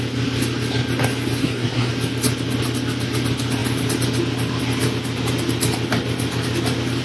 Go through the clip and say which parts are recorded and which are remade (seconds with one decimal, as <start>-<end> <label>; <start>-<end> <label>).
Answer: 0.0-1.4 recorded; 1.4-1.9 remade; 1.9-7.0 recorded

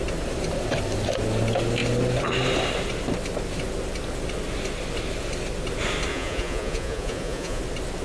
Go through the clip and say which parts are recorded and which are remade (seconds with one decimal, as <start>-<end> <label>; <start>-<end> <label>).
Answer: 0.0-6.1 recorded; 6.1-7.6 remade; 7.6-8.0 recorded

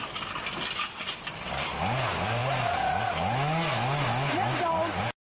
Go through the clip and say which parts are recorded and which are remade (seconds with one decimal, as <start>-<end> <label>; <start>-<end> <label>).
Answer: 0.0-5.3 recorded

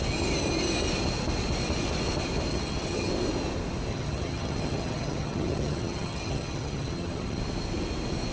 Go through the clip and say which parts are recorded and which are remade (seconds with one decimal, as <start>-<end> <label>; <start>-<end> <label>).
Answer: 0.0-2.5 recorded; 2.5-3.1 remade; 3.1-3.9 recorded; 3.9-7.4 remade; 7.4-8.3 recorded

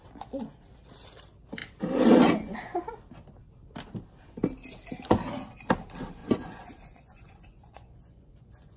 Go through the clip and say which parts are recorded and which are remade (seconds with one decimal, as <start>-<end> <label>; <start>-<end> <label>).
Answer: 0.0-6.2 recorded; 6.2-8.8 remade